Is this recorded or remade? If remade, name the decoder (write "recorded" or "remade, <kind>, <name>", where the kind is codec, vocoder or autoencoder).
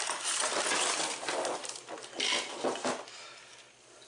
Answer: recorded